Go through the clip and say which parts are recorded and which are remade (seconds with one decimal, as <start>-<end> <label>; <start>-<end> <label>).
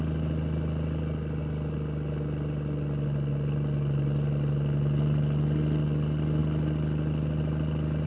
0.0-8.1 recorded